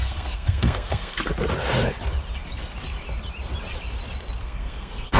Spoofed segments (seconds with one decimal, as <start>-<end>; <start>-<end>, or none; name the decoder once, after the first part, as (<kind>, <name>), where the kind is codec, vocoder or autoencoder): 0.0-1.3 (codec, SNAC); 4.4-5.2